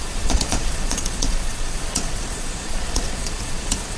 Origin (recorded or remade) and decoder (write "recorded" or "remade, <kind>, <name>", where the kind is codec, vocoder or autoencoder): remade, vocoder, Vocos